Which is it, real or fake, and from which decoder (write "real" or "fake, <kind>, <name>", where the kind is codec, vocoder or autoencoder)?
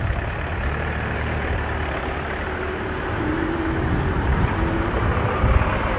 fake, vocoder, BigVGAN v2